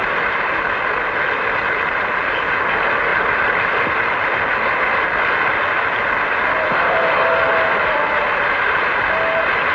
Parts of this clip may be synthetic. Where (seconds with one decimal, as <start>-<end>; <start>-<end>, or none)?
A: 3.1-4.3

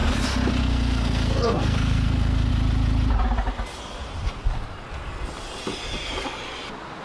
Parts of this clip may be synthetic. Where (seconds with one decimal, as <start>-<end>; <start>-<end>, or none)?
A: 0.6-2.5

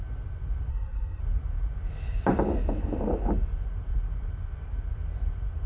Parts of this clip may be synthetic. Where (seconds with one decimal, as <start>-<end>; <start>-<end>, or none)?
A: 0.7-1.2

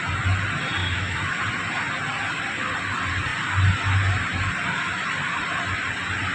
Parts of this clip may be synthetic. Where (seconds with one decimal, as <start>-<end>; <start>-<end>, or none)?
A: 0.8-1.4

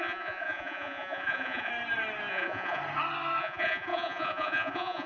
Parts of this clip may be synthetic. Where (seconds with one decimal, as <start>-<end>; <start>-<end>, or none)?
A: 0.0-1.7; 2.3-2.8; 3.4-5.1

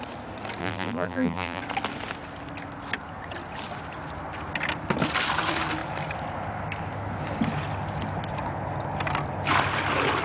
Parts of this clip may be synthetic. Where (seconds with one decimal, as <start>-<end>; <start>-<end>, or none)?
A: 0.6-1.6

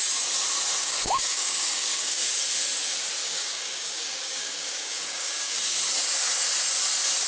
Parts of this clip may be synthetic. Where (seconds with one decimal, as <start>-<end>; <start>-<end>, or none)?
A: 0.8-2.4; 3.2-5.6